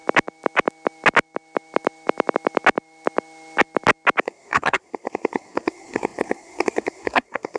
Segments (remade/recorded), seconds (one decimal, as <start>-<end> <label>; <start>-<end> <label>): 0.0-4.2 recorded; 4.2-7.6 remade